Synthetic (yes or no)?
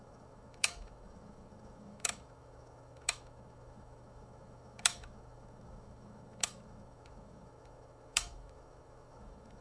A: yes